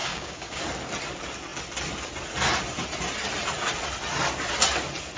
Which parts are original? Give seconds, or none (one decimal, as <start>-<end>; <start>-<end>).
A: 0.6-5.2